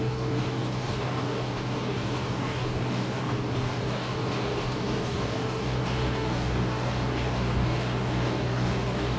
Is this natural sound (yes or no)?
no